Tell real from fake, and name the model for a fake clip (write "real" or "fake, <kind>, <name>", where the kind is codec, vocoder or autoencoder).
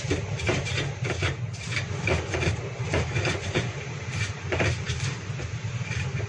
fake, vocoder, BigVGAN v2